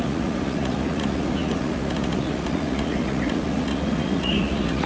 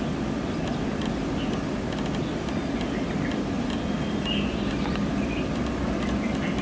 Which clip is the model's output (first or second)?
first